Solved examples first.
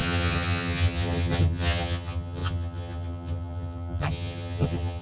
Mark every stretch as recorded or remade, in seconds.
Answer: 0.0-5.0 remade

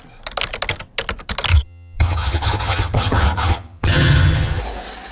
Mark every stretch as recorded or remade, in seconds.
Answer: 0.0-1.5 recorded; 1.5-4.6 remade; 4.6-5.1 recorded

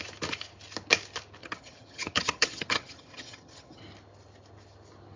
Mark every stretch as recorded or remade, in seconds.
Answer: 0.0-1.4 recorded; 1.4-3.8 remade; 3.8-5.2 recorded

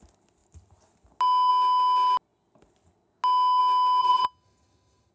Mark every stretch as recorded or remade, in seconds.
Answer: 0.0-4.0 recorded; 4.0-5.1 remade

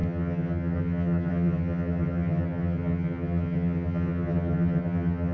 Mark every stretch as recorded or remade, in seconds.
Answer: 0.0-5.3 remade

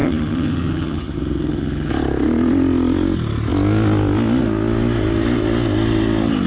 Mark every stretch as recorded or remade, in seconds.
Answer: 0.0-1.9 remade; 1.9-6.5 recorded